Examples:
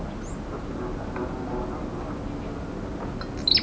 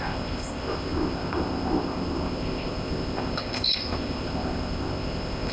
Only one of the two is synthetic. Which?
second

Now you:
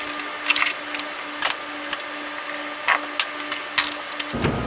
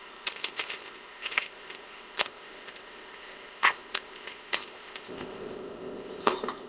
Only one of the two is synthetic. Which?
second